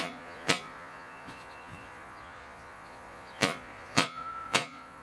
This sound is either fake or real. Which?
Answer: fake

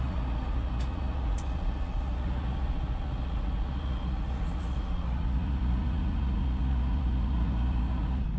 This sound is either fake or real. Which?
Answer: fake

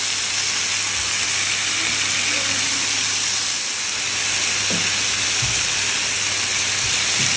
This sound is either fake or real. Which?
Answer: real